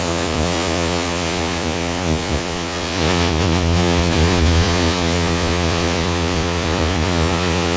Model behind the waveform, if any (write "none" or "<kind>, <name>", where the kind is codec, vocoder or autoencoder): vocoder, Vocos